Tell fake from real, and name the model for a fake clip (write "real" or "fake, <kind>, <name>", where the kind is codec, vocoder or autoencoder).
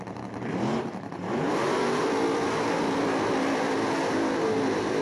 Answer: fake, vocoder, BigVGAN v2